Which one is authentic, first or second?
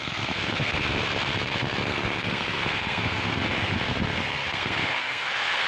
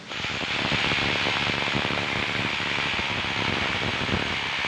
second